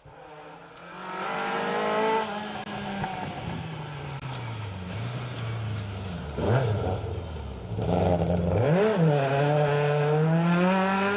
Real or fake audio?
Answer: real